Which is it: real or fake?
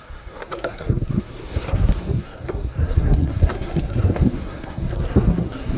fake